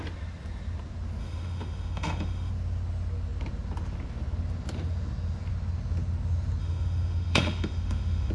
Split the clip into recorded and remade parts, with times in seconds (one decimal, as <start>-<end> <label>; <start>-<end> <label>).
0.0-1.2 recorded; 1.2-2.5 remade; 2.5-6.6 recorded; 6.6-8.3 remade